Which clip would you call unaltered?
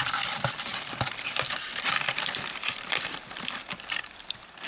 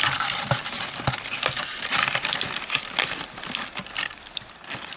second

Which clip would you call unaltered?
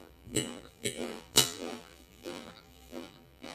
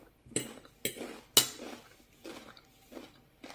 second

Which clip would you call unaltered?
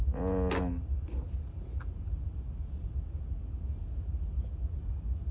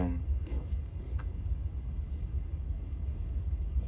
first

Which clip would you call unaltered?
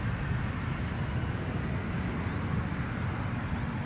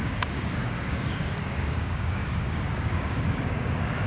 first